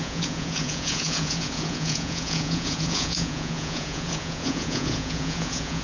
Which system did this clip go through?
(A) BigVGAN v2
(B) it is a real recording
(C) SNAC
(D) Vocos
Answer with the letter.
D